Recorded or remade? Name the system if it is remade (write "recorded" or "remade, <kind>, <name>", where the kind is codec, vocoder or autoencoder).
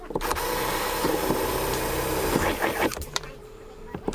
remade, vocoder, BigVGAN v2